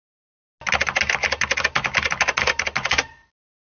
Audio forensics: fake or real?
real